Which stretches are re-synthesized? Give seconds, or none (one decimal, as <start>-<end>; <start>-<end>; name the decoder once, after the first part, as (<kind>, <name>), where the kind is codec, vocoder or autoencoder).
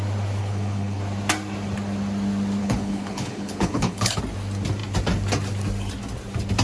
0.4-1.0 (codec, HILCodec); 2.6-4.2